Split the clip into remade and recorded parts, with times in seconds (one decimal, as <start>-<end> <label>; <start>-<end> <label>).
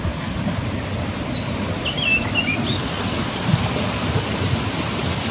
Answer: 0.0-5.3 recorded